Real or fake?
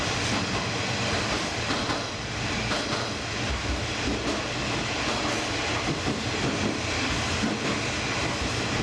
real